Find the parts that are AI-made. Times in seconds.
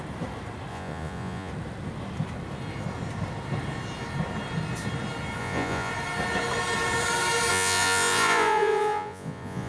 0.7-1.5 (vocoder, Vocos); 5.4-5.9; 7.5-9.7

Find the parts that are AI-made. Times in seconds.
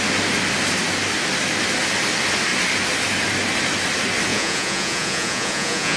4.3-6.0 (vocoder, Vocos)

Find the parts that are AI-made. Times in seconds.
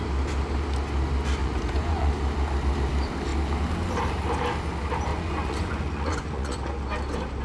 1.4-2.1 (vocoder, Vocos); 5.1-6.6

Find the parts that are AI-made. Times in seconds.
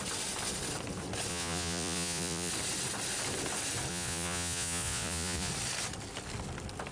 1.3-2.5 (vocoder, Vocos); 3.9-5.5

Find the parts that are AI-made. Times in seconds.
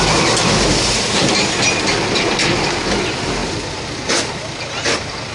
none